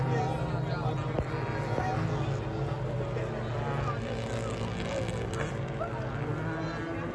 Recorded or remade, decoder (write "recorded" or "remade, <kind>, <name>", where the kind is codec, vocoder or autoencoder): recorded